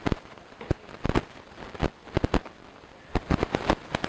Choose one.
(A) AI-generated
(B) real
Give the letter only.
B